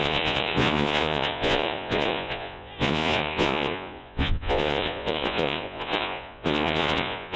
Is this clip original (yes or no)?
no